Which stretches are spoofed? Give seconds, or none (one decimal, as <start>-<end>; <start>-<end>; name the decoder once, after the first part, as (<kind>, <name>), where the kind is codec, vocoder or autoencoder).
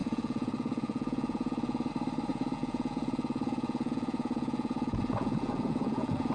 0.0-1.9 (vocoder, Vocos); 2.3-6.3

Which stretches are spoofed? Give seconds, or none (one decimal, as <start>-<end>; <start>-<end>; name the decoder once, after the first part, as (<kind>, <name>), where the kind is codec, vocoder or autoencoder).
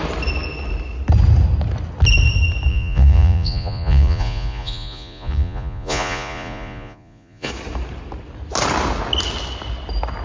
2.7-7.5 (vocoder, Vocos)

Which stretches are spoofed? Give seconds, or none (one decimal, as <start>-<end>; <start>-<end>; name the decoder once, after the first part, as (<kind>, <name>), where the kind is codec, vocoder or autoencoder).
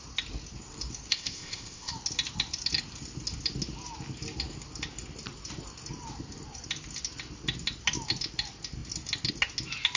1.1-1.9 (codec, ZipCodec)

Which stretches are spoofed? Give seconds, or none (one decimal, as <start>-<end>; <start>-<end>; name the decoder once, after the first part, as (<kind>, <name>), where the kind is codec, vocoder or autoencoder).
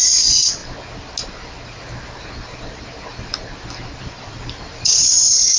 0.0-0.6 (vocoder, Vocos); 4.0-4.4; 5.0-5.6